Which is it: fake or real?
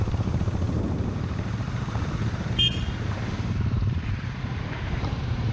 fake